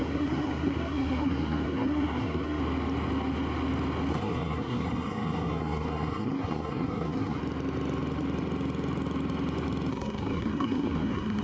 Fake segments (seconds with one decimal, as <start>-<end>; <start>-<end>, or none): 0.0-2.6; 4.1-7.4; 9.9-11.4

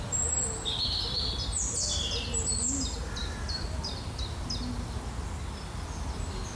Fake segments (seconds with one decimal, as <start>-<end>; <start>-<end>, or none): 3.2-3.9

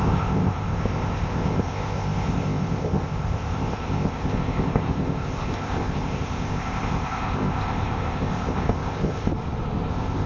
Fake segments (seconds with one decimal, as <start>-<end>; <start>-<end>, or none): 0.0-9.3; 9.9-10.3

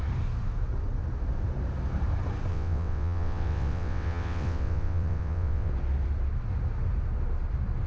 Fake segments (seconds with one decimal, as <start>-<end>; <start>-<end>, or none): 2.5-5.7

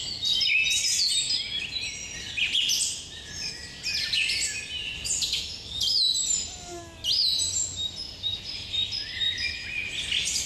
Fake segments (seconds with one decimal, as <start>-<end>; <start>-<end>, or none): none

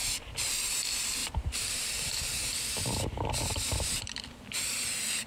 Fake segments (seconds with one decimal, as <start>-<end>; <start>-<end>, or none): 1.2-4.4